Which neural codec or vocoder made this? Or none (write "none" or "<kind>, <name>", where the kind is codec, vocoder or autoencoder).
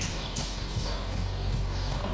codec, DAC